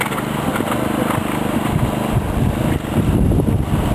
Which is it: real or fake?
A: real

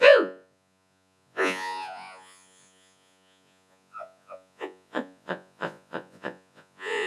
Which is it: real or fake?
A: fake